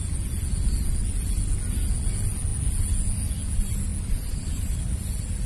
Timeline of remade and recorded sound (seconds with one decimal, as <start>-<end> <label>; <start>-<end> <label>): 0.0-5.5 recorded